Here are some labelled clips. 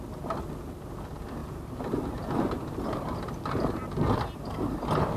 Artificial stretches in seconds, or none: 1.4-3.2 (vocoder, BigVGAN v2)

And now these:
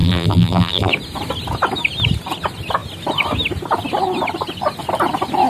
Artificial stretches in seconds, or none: 0.0-0.9 (vocoder, BigVGAN v2)